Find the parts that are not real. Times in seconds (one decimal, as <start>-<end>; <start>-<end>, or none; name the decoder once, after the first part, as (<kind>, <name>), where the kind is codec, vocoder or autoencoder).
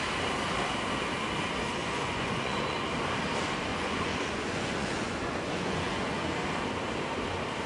1.8-2.9 (vocoder, Vocos); 3.7-6.3